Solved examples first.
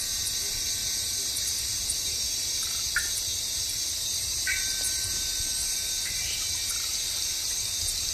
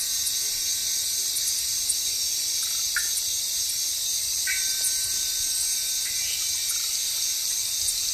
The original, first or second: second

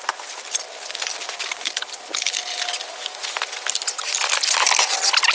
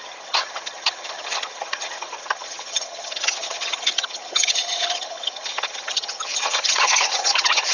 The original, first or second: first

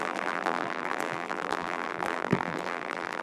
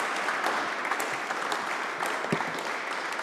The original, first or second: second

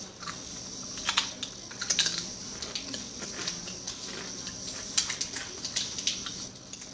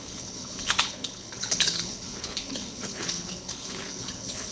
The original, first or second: first